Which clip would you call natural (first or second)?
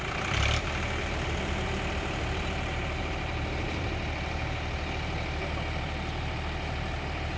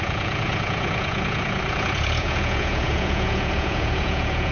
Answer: first